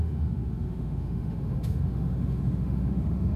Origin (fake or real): fake